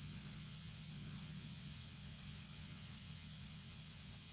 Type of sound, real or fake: fake